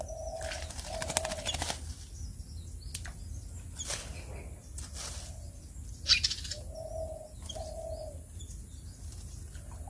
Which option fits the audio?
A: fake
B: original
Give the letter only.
B